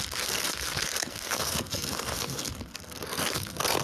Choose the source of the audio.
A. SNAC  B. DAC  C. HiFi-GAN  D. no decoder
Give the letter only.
A